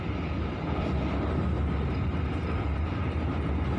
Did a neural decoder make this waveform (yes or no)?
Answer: no